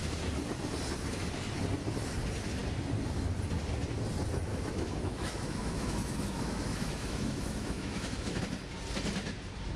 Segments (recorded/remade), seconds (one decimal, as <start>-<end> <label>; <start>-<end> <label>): 0.0-4.5 recorded; 4.5-8.4 remade; 8.4-9.8 recorded

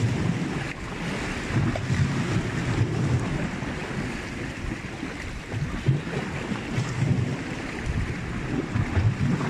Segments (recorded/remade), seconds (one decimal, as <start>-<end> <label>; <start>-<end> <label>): 0.0-9.5 recorded

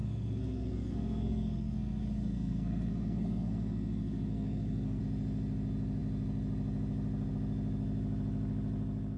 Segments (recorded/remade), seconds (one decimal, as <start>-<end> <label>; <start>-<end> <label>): 0.0-5.0 remade; 5.0-9.2 recorded

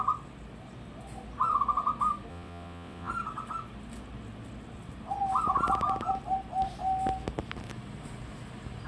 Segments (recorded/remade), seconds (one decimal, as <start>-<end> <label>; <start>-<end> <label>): 0.0-2.3 recorded; 2.3-3.1 remade; 3.1-8.9 recorded

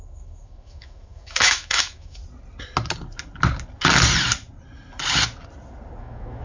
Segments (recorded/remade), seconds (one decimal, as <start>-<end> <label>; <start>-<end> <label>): 0.0-2.2 remade; 2.2-6.0 recorded; 6.0-6.4 remade